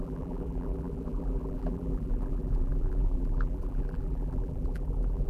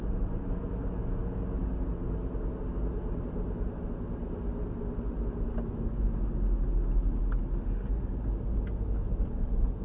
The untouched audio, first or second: second